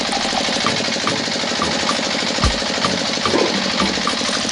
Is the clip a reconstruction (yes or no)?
no